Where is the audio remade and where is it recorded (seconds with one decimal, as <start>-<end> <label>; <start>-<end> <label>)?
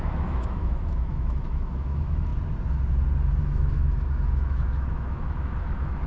0.0-2.3 remade; 2.3-3.4 recorded; 3.4-6.1 remade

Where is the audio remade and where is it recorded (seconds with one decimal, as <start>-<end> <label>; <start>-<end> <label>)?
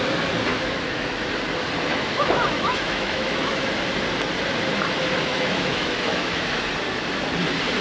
0.0-0.5 recorded; 0.5-1.3 remade; 1.3-1.9 recorded; 1.9-3.7 remade; 3.7-5.3 recorded; 5.3-6.7 remade; 6.7-7.8 recorded